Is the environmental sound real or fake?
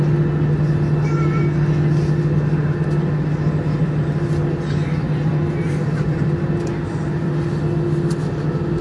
real